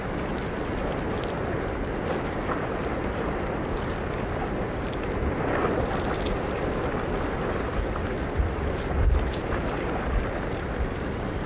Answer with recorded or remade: recorded